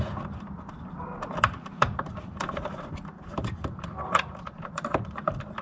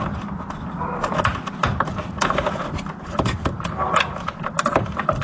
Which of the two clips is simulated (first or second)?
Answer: first